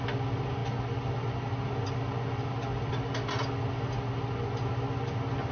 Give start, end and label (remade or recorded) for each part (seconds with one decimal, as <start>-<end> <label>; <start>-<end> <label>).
0.0-5.5 recorded